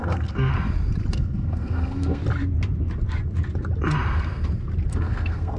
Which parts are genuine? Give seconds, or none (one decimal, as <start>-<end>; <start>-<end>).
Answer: 0.5-1.1; 2.2-4.9